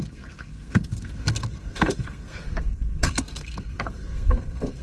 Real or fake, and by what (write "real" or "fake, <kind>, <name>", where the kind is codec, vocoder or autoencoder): fake, codec, SNAC